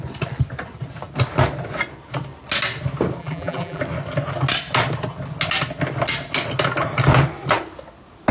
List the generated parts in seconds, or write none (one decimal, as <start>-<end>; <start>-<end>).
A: 3.2-3.8